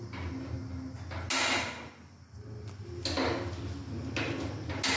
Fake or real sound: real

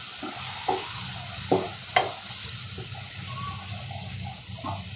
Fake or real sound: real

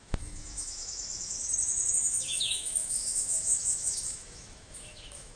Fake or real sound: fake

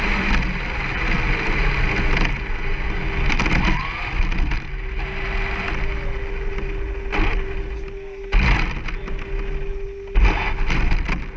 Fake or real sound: real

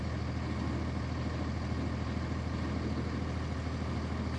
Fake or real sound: real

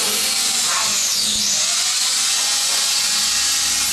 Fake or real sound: fake